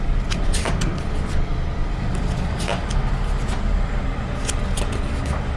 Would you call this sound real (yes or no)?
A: yes